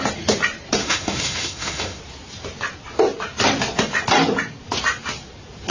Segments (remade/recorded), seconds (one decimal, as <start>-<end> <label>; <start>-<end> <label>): 0.0-0.8 recorded; 0.8-2.0 remade; 2.0-5.7 recorded